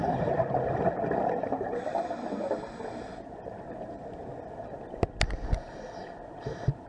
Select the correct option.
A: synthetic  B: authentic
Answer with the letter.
B